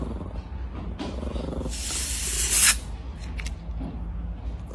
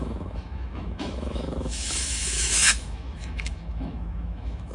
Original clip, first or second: first